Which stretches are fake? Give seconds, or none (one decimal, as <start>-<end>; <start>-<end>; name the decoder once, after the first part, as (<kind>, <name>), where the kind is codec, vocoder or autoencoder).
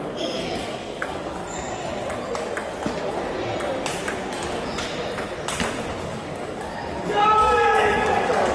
0.0-1.4 (codec, DAC); 6.0-8.5